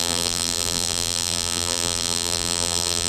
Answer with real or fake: fake